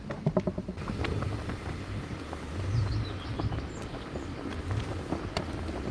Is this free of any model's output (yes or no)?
yes